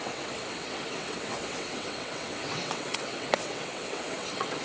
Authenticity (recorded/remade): remade